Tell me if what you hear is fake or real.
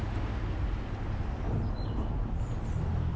real